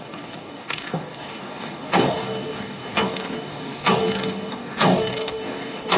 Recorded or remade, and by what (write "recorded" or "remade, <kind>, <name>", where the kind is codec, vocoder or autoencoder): remade, codec, DAC